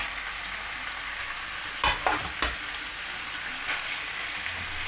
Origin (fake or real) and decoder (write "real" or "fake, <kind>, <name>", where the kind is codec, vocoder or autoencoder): real